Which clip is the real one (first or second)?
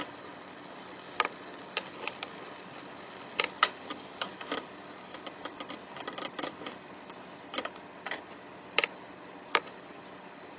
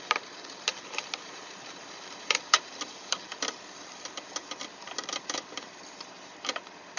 first